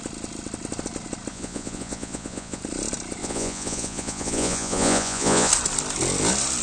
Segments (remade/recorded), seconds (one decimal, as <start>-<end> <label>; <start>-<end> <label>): 0.0-1.3 recorded; 1.3-2.6 remade; 2.6-3.2 recorded; 3.2-5.5 remade; 5.5-6.6 recorded